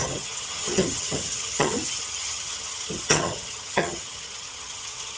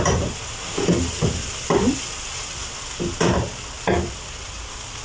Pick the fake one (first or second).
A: first